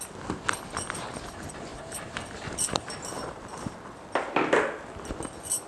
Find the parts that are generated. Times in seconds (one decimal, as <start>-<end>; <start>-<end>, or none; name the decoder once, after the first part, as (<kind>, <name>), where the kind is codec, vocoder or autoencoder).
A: 1.7-5.1 (vocoder, BigVGAN v2)